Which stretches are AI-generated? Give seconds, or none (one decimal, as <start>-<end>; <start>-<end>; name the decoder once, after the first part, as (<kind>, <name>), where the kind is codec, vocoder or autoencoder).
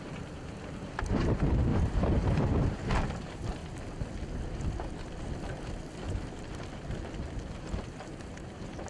0.0-3.6 (vocoder, BigVGAN v2); 7.5-8.9